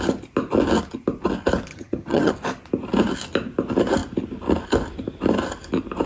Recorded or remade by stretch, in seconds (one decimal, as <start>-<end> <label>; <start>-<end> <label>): 0.0-1.7 recorded; 1.7-2.3 remade; 2.3-6.1 recorded